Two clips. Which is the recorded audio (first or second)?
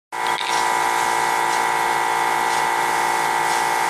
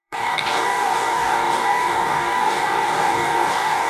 first